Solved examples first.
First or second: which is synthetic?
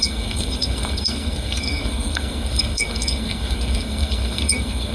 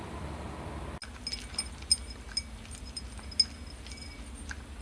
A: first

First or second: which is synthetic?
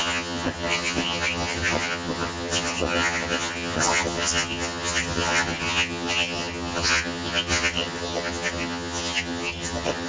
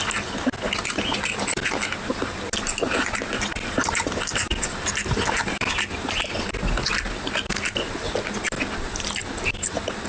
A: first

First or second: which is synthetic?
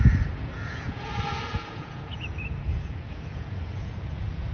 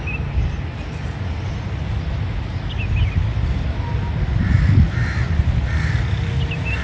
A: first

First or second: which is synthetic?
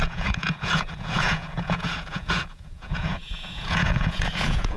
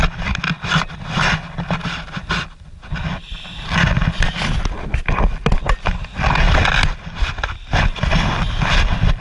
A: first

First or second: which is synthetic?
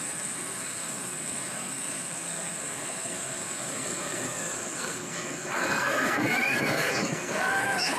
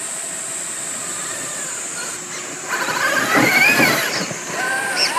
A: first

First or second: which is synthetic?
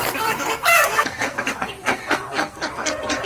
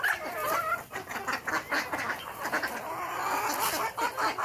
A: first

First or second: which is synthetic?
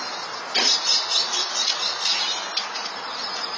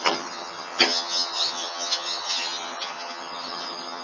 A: second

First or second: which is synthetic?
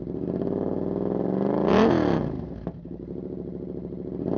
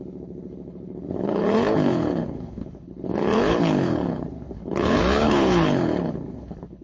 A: second